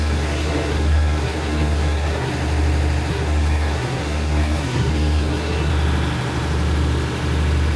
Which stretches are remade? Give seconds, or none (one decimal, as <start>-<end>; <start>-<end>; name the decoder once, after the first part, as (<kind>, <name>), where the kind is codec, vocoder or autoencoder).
0.0-2.3 (codec, SNAC); 3.1-5.7